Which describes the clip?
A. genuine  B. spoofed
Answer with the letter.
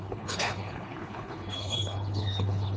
B